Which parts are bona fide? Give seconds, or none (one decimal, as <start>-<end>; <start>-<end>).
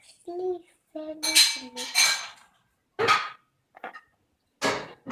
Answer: 0.0-5.1